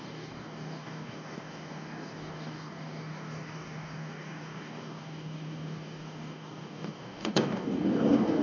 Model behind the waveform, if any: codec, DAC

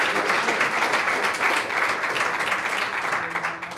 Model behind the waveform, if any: none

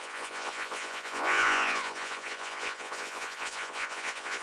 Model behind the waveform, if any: vocoder, Vocos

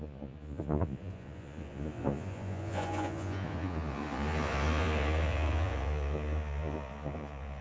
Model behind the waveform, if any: vocoder, Vocos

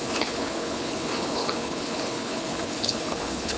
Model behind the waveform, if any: codec, HILCodec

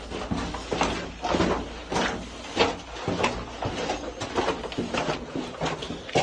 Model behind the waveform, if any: none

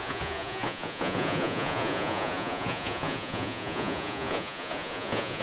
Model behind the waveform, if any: vocoder, Vocos